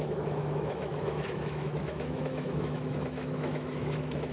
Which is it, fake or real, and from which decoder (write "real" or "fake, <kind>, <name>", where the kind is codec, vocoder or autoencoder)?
fake, autoencoder, DAC-VAE